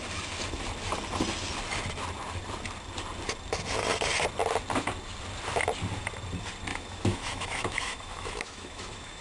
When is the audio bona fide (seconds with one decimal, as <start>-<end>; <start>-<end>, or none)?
0.0-6.7